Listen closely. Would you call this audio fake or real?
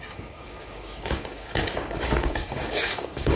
fake